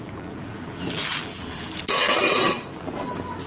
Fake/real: fake